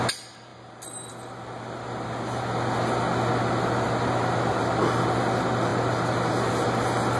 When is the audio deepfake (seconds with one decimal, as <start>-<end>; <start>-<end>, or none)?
none